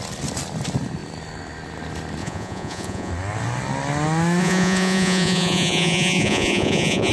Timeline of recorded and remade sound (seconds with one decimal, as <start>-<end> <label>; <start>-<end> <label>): 0.0-2.2 recorded; 2.2-3.1 remade; 3.1-4.4 recorded; 4.4-7.1 remade